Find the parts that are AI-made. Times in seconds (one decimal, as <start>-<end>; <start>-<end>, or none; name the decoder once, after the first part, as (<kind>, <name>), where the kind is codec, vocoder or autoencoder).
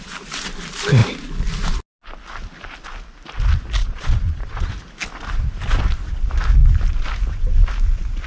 3.8-4.7 (vocoder, Vocos)